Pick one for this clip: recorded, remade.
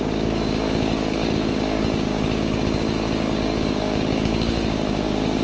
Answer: remade